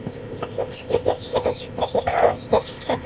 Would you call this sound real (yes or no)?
no